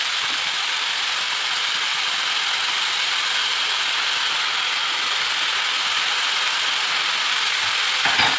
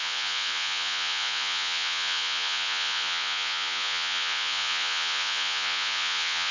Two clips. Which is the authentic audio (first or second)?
first